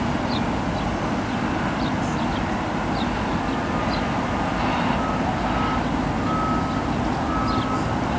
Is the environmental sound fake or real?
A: real